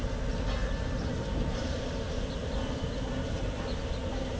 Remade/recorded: recorded